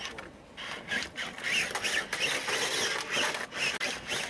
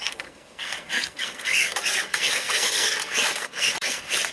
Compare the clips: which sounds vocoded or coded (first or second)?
second